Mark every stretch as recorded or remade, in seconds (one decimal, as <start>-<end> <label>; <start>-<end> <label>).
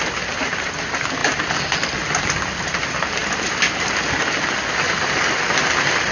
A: 0.0-6.1 recorded